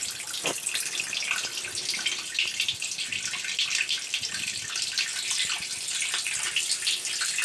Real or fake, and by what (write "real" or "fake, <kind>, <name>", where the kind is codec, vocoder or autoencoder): real